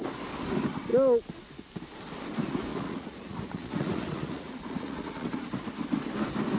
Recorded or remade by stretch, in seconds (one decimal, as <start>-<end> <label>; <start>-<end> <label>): 0.0-2.7 recorded; 2.7-5.7 remade; 5.7-6.6 recorded